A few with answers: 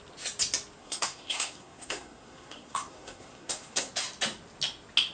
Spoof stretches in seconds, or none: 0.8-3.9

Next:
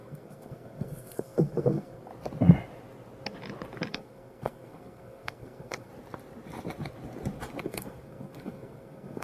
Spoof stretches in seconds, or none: 0.0-2.1; 3.9-5.9; 7.6-9.2

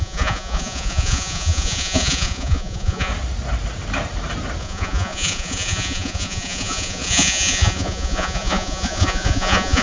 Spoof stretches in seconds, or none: 0.0-3.1; 4.6-9.8